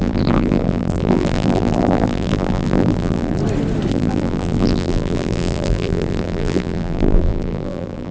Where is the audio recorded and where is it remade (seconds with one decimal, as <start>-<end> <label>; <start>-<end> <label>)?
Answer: 0.0-3.4 remade; 3.4-3.9 recorded; 3.9-8.1 remade